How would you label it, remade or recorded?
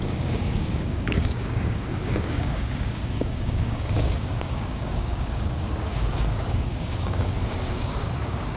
remade